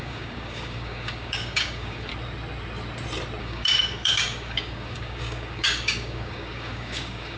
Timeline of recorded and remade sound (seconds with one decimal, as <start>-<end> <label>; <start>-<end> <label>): 0.0-2.1 remade; 2.1-3.4 recorded; 3.4-7.4 remade